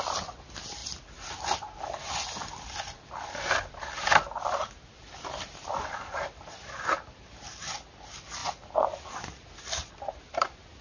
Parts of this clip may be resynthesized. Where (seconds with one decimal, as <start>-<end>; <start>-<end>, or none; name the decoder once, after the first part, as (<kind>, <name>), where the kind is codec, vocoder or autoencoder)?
none